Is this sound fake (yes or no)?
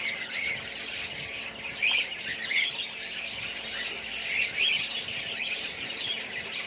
no